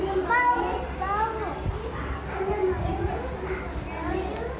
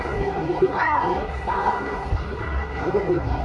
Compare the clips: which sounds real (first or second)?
first